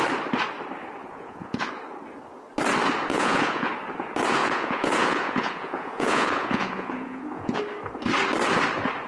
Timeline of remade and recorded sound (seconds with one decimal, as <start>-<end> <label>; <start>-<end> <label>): 0.0-1.0 recorded; 1.0-1.7 remade; 1.7-3.1 recorded; 3.1-3.7 remade; 3.7-4.4 recorded; 4.4-7.6 remade; 7.6-9.1 recorded